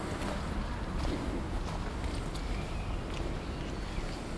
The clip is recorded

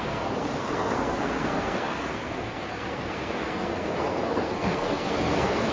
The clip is remade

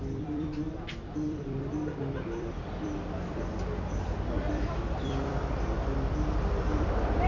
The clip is remade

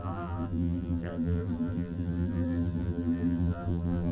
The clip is remade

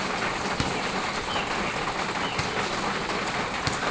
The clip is recorded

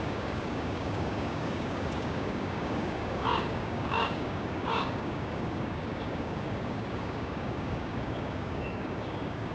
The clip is remade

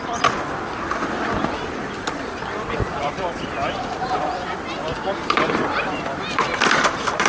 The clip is remade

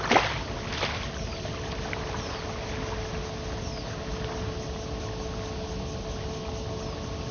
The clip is recorded